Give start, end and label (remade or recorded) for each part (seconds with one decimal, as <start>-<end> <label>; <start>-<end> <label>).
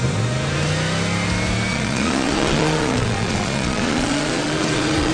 0.0-1.7 recorded; 1.7-5.1 remade